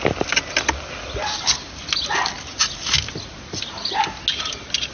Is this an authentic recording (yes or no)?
yes